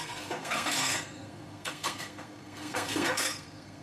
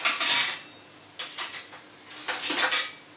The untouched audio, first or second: second